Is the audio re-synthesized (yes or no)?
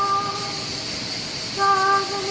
no